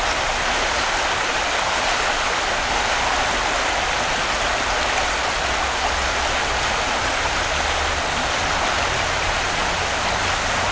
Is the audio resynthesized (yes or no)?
no